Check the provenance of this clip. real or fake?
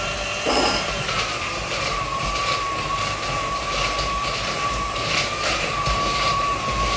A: fake